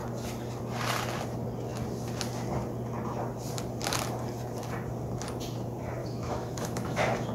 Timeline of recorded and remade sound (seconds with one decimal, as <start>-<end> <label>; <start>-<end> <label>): 0.0-6.0 recorded; 6.0-7.3 remade